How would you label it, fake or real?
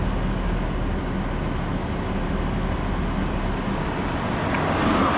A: real